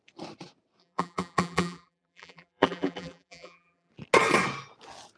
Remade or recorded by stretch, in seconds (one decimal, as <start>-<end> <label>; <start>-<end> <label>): 0.0-0.8 recorded; 0.8-3.9 remade; 3.9-5.2 recorded